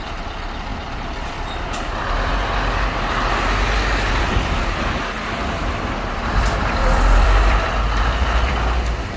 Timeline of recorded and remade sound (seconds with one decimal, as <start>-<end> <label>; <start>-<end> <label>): 0.0-2.3 remade; 2.3-4.1 recorded; 4.1-9.2 remade